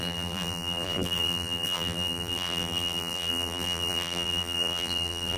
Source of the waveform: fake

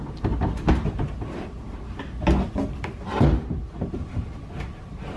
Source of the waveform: real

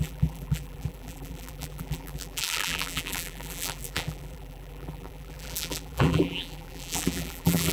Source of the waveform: fake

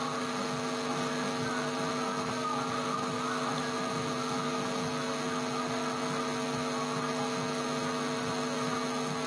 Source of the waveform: real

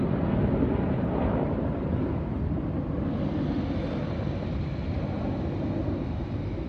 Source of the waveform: real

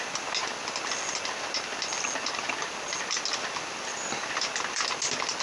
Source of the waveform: real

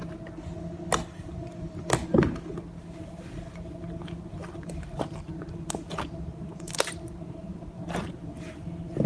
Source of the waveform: real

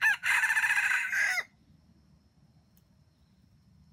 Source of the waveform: fake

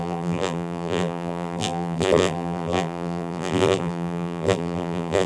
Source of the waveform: fake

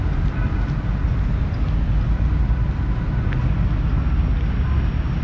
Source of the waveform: real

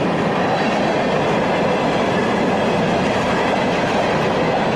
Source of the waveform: fake